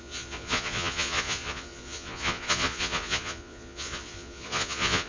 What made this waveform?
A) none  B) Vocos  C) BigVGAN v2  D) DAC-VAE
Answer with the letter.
B